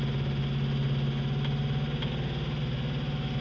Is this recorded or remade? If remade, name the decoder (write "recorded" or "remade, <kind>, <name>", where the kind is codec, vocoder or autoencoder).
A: recorded